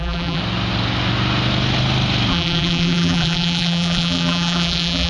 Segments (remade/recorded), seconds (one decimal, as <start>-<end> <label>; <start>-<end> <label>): 0.0-0.4 remade; 0.4-2.3 recorded; 2.3-5.1 remade